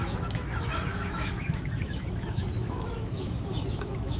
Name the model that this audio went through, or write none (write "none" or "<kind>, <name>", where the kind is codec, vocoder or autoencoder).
autoencoder, DAC-VAE